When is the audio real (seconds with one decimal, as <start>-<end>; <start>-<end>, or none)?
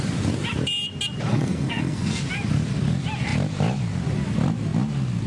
0.0-1.3; 2.2-5.3